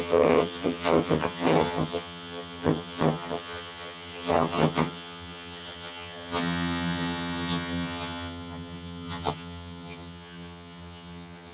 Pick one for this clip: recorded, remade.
remade